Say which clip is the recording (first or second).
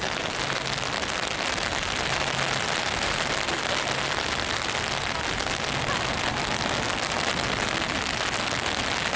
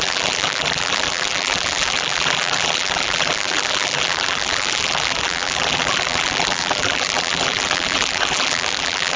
first